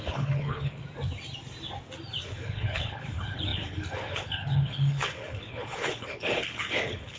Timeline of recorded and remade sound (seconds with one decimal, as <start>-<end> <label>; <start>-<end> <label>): 0.0-0.8 remade; 0.8-2.3 recorded; 2.3-7.2 remade